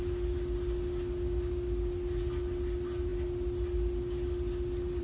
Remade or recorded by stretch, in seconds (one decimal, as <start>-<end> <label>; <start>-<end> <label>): 0.0-5.0 recorded